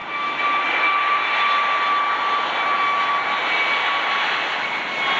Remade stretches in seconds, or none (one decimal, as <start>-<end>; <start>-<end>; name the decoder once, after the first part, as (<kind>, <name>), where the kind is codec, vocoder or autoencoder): none